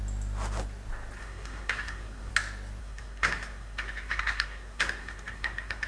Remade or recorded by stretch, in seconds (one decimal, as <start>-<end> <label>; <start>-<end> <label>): 0.0-1.2 recorded; 1.2-2.3 remade; 2.3-2.8 recorded; 2.8-5.9 remade